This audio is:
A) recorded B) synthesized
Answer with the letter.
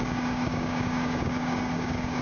B